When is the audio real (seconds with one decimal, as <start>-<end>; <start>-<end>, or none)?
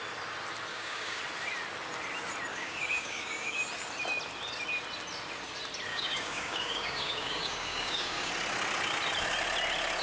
0.0-0.7; 1.2-2.5; 3.6-5.9; 8.3-10.0